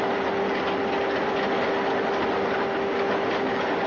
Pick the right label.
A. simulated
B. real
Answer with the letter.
B